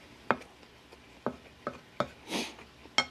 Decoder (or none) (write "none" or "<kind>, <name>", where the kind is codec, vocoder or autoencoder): none